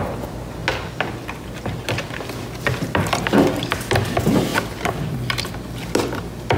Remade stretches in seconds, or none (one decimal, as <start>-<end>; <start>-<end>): none